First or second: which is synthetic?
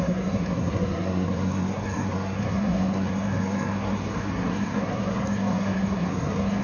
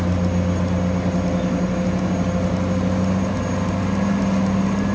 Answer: first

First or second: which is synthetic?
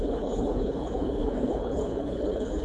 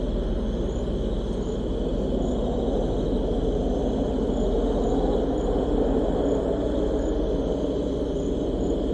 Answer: first